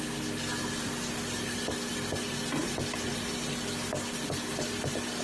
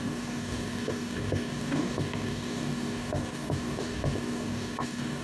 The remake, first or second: second